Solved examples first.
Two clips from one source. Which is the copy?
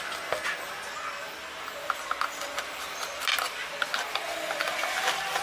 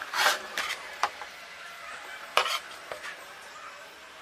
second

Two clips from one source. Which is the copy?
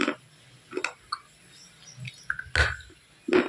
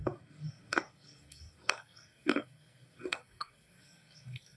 second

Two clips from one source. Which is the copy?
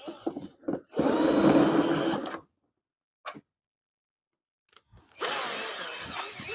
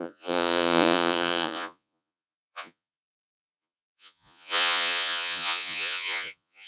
second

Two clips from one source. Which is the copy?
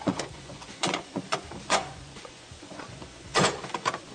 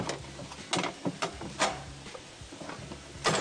first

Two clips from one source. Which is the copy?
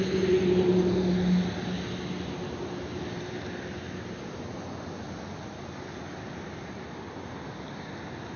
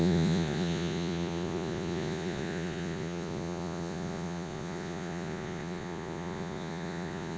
second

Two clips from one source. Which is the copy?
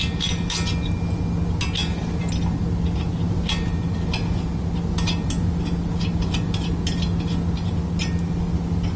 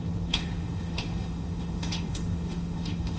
second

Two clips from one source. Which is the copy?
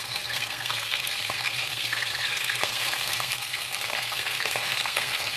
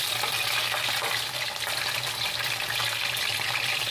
first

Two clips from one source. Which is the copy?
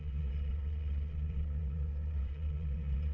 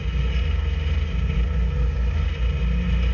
first